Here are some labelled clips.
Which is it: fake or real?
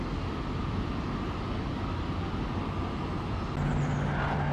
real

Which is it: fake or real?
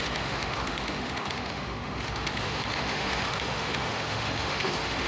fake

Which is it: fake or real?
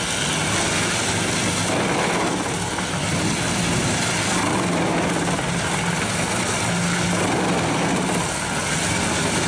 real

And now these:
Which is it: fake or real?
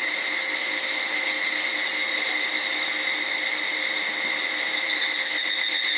real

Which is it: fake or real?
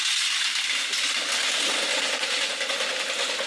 real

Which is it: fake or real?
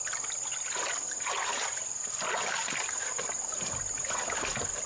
real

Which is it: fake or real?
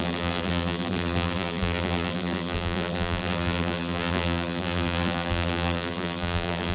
fake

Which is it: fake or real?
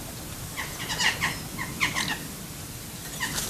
real